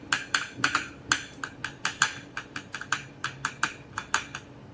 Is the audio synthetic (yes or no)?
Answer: no